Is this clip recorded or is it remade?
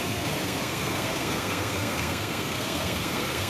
remade